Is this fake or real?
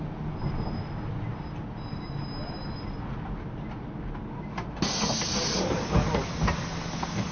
real